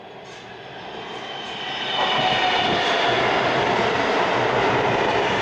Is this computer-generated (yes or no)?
no